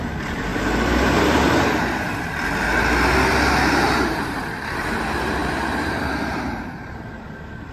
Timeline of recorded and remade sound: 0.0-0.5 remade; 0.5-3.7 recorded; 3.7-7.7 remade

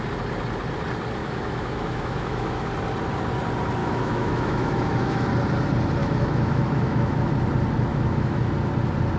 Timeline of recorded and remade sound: 0.0-1.2 recorded; 1.2-2.7 remade; 2.7-3.8 recorded; 3.8-5.3 remade; 5.3-6.0 recorded; 6.0-7.3 remade; 7.3-7.9 recorded; 7.9-8.5 remade; 8.5-9.2 recorded

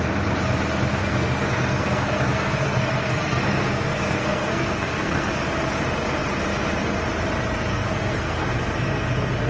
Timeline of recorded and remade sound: 0.0-1.0 recorded; 1.0-5.3 remade; 5.3-7.7 recorded; 7.7-8.5 remade; 8.5-9.5 recorded